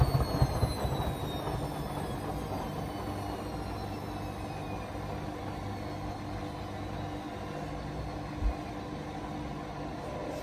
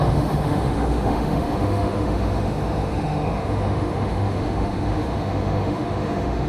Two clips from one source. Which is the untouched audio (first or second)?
first